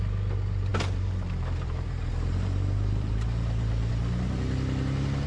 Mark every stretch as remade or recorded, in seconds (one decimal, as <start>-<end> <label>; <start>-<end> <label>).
0.0-0.7 recorded; 0.7-3.9 remade; 3.9-5.3 recorded